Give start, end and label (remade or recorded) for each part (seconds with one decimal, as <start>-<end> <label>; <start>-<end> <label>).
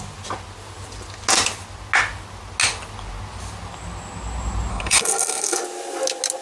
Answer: 0.0-4.7 recorded; 4.7-5.6 remade; 5.6-6.4 recorded